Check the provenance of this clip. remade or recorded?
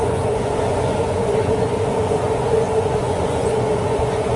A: remade